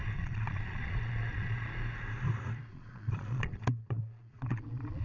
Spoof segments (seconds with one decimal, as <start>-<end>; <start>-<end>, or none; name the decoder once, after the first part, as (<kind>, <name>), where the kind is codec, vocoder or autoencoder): 0.0-1.7 (vocoder, Vocos); 2.7-5.0